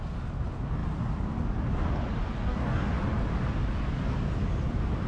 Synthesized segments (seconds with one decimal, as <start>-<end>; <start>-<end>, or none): 2.3-2.9